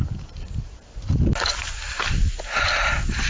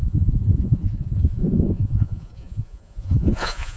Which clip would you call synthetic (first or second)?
second